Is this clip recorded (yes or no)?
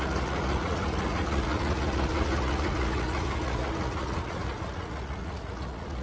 no